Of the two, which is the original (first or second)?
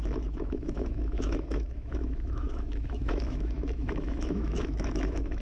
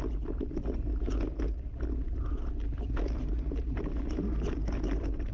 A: second